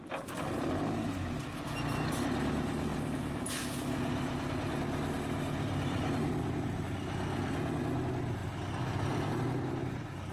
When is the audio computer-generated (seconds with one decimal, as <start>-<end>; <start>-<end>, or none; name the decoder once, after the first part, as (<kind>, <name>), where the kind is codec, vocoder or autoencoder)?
2.9-4.5 (vocoder, BigVGAN v2); 8.4-9.3